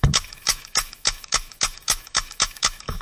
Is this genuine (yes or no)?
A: no